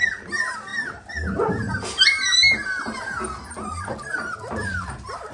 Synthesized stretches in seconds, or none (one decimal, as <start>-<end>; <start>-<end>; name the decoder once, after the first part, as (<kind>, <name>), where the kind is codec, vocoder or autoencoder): 0.0-0.7 (vocoder, BigVGAN v2); 3.9-5.3